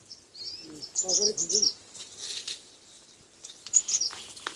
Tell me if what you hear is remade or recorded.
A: recorded